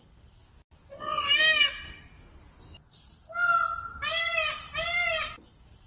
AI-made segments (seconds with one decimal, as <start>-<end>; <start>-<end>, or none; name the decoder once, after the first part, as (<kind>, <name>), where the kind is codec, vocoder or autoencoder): none